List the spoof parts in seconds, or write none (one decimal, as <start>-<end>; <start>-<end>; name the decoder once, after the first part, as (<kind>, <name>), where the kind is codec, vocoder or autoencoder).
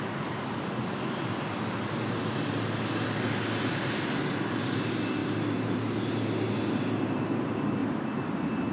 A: none